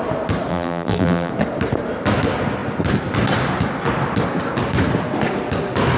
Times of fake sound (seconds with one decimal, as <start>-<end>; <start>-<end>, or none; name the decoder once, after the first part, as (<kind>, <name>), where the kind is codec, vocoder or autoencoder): 0.5-1.3 (vocoder, BigVGAN v2)